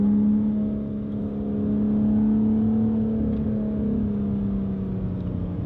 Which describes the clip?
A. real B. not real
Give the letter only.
A